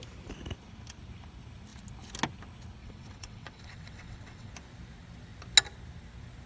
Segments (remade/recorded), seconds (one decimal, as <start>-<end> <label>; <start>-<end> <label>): 0.0-2.8 recorded; 2.8-4.5 remade; 4.5-6.5 recorded